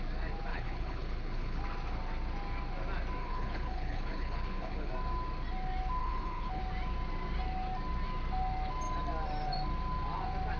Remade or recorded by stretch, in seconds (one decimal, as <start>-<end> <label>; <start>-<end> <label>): 0.0-0.5 recorded; 0.5-1.6 remade; 1.6-3.2 recorded; 3.2-4.9 remade; 4.9-6.0 recorded; 6.0-6.6 remade; 6.6-10.6 recorded